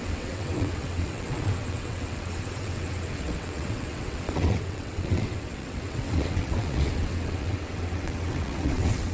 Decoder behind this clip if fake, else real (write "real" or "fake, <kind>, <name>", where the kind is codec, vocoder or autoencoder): fake, vocoder, WaveNeXt